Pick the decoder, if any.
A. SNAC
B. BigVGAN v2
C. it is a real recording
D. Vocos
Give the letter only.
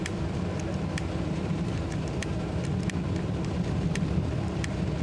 B